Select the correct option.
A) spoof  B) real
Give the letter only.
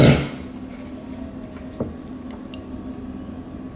B